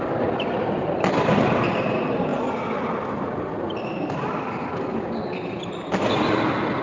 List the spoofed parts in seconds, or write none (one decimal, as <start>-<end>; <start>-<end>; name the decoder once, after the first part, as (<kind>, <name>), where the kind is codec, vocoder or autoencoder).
none